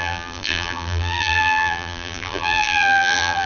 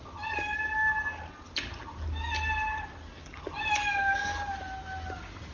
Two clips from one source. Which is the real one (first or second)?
second